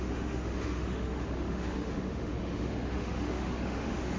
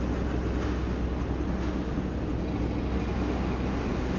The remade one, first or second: first